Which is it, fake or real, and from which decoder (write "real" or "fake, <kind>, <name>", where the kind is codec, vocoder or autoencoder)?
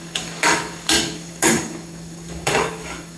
fake, codec, DAC